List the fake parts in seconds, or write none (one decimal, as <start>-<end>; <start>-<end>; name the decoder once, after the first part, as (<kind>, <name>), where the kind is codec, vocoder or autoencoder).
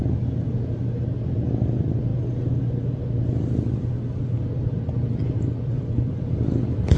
none